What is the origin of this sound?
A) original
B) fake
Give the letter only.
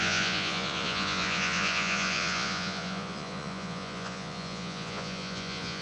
B